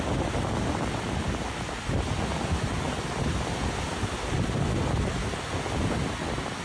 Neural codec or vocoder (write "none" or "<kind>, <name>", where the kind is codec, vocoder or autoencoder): none